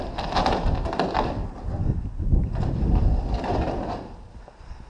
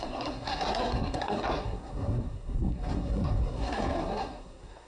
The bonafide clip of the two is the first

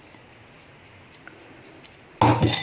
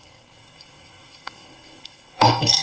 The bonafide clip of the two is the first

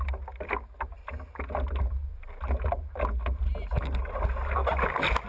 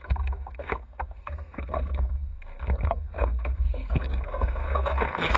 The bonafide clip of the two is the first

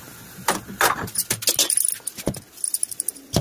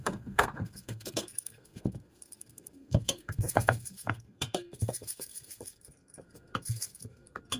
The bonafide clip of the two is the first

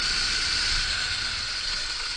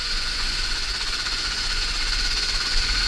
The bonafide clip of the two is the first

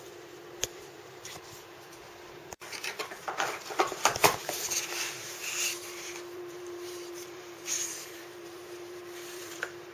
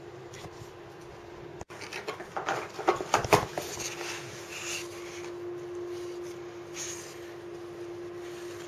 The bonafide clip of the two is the second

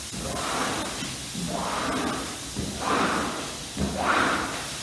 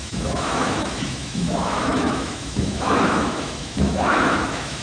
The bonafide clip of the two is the first